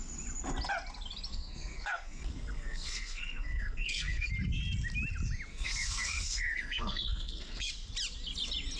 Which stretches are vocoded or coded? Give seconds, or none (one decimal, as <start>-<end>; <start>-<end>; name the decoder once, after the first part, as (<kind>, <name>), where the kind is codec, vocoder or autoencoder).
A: 1.3-4.3 (codec, SNAC); 5.5-7.7